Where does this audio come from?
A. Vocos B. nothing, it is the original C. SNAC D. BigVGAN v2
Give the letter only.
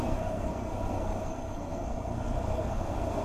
C